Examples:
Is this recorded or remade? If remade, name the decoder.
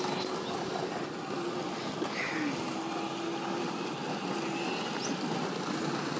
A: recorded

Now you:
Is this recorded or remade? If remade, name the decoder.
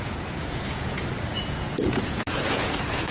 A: remade, vocoder, Vocos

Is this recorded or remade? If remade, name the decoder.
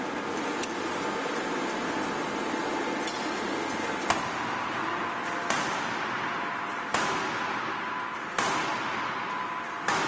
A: recorded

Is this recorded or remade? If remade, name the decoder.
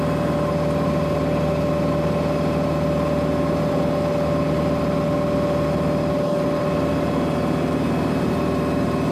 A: recorded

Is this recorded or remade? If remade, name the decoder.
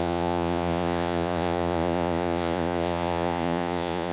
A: remade, vocoder, Vocos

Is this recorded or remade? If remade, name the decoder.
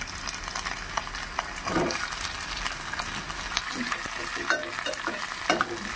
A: recorded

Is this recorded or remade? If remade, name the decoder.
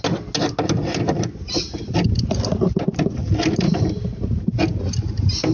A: recorded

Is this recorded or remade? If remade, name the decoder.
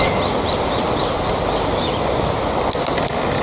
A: recorded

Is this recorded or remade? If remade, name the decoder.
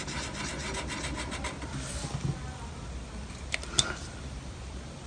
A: recorded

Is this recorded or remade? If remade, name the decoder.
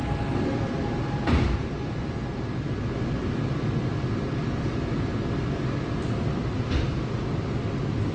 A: recorded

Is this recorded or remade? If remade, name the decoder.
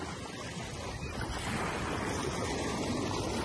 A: recorded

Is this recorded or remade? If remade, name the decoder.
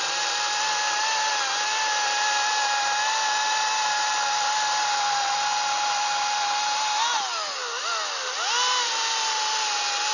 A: recorded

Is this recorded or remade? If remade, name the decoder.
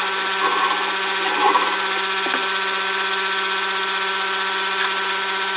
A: recorded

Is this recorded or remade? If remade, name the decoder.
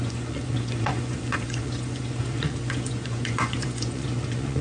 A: remade, vocoder, Vocos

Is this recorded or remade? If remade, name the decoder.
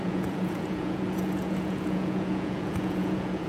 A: remade, vocoder, Vocos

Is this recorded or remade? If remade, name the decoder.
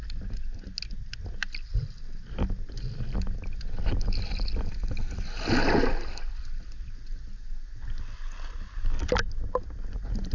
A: recorded